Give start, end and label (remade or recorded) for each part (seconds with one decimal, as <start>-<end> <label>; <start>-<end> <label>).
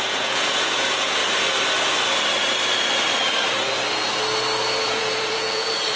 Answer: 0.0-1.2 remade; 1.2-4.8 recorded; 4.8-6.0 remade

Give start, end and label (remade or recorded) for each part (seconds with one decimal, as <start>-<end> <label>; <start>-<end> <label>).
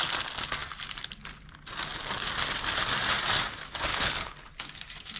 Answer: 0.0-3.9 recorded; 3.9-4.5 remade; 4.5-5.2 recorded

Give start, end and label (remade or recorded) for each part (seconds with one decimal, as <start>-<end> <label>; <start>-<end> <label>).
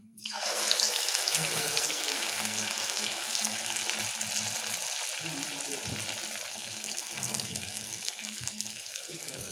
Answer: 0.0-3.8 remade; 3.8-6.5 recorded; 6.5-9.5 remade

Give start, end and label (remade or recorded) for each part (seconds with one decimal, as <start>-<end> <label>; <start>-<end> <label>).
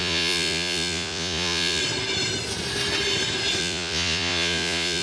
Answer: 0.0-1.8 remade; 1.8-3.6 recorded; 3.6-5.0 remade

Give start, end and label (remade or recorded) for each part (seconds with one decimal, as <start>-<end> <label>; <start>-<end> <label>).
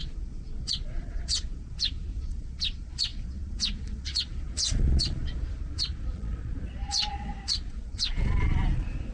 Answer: 0.0-9.1 remade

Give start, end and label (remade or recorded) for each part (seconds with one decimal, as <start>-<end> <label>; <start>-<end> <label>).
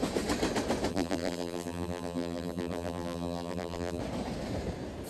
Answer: 0.0-0.9 recorded; 0.9-4.0 remade; 4.0-5.1 recorded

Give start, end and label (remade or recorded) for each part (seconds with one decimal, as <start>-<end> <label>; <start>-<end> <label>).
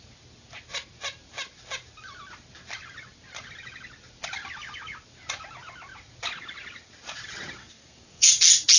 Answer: 0.0-7.6 recorded; 7.6-8.3 remade; 8.3-8.8 recorded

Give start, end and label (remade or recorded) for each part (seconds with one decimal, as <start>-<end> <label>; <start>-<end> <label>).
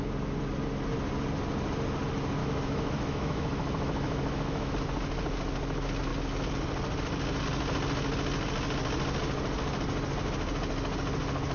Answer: 0.0-2.4 recorded; 2.4-4.7 remade; 4.7-11.5 recorded